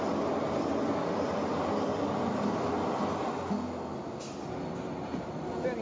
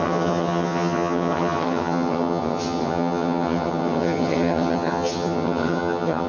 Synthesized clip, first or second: second